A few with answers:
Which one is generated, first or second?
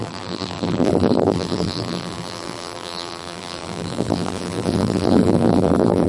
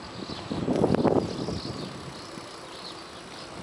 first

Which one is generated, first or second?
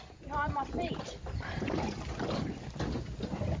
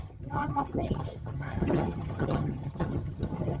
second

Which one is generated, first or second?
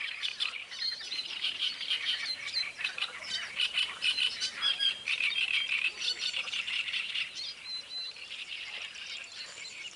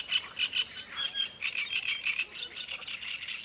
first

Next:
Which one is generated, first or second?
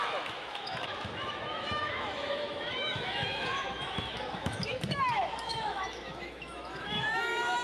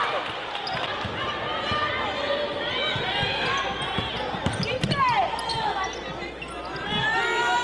first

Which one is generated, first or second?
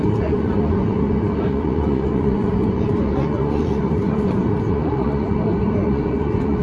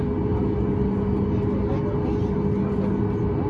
first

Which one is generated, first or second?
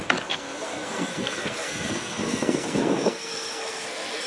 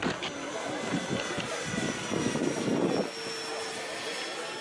first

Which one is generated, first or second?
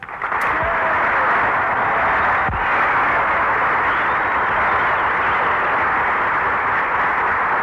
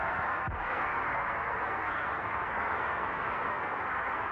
second